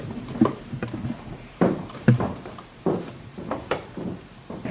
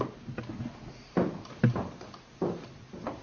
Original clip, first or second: second